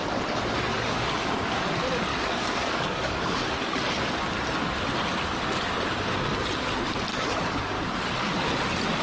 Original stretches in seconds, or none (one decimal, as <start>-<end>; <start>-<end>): 0.0-0.7; 1.6-2.1; 3.5-7.1; 7.9-9.0